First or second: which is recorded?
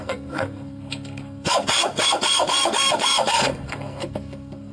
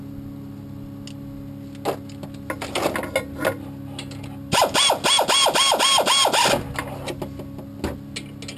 second